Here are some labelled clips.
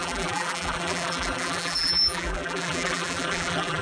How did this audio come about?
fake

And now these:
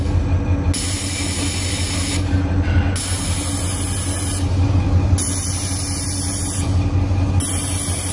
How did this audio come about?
real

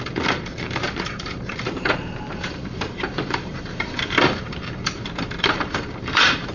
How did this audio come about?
fake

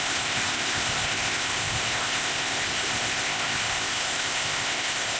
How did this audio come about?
fake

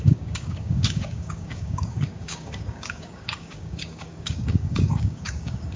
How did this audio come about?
fake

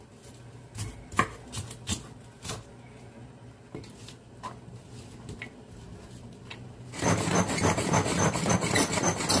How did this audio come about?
real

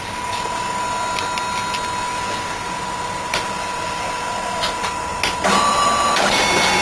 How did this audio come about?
real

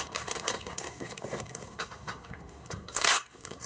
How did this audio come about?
fake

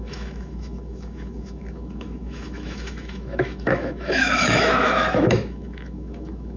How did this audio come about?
fake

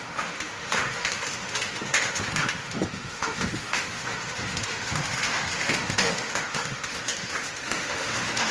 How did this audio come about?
fake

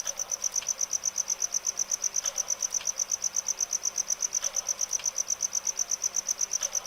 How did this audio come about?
real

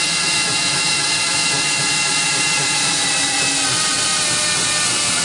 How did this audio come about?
real